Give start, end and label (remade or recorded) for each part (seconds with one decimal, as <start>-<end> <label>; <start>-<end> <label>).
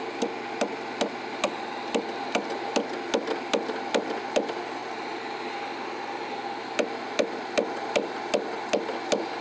0.0-9.4 recorded